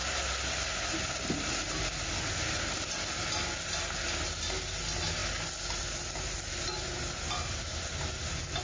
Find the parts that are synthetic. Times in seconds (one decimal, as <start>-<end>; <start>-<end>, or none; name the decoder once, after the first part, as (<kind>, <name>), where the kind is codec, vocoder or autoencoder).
none